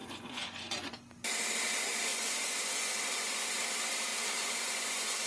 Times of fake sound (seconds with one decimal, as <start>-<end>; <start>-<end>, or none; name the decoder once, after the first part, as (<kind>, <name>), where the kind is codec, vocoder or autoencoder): 0.0-0.9 (vocoder, Vocos); 2.1-3.6; 4.1-5.3

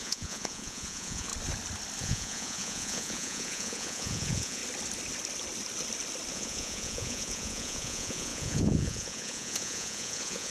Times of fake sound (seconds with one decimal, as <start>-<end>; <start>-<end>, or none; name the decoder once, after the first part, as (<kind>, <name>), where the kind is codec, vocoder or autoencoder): 0.0-1.3 (vocoder, Vocos); 2.0-4.6; 6.3-10.5

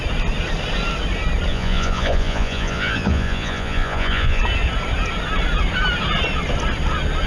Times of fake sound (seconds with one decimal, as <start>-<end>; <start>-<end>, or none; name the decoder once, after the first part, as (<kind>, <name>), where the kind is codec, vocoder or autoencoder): 1.5-4.4 (vocoder, Vocos)

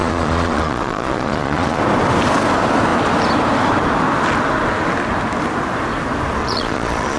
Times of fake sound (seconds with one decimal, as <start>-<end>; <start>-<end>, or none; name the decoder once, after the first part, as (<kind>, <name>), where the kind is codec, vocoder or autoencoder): 0.0-1.8 (vocoder, Vocos); 6.4-7.2

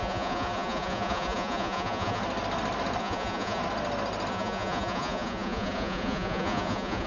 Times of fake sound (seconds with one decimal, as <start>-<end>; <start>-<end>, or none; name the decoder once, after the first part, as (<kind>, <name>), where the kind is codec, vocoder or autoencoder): 0.0-2.2 (vocoder, Vocos); 3.0-3.6; 4.3-7.1